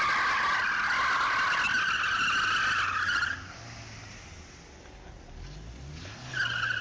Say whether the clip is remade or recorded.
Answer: recorded